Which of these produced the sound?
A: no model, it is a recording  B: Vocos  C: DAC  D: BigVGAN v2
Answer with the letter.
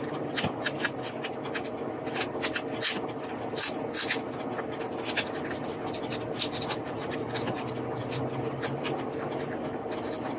A